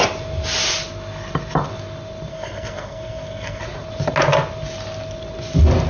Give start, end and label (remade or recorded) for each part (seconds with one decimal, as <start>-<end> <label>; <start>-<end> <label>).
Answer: 0.0-2.3 recorded; 2.3-3.6 remade; 3.6-5.9 recorded

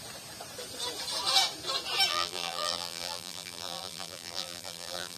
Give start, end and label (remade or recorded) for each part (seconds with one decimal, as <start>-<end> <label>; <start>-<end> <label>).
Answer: 0.0-2.1 recorded; 2.1-5.2 remade

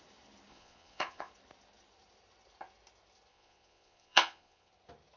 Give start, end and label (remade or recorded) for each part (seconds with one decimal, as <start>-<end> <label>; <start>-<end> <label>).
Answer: 0.0-0.5 recorded; 0.5-1.3 remade; 1.3-3.3 recorded; 3.3-4.7 remade; 4.7-5.2 recorded

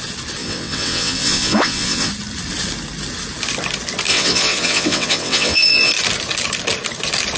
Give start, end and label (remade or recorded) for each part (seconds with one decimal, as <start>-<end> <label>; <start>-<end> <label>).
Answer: 0.0-0.4 recorded; 0.4-2.1 remade; 2.1-4.1 recorded; 4.1-5.9 remade; 5.9-7.4 recorded

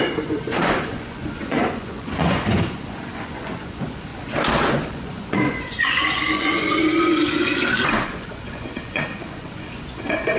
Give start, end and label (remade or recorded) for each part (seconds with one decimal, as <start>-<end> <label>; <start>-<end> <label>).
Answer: 0.0-4.1 remade; 4.1-4.7 recorded; 4.7-10.4 remade

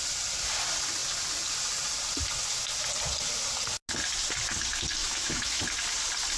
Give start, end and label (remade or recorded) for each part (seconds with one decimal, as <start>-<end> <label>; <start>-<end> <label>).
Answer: 0.0-5.0 recorded; 5.0-5.6 remade; 5.6-6.4 recorded